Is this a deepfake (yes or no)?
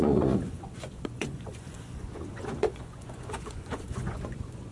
yes